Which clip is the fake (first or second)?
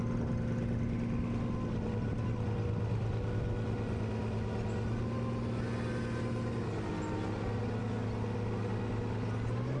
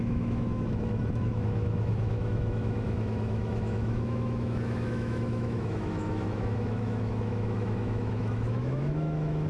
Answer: second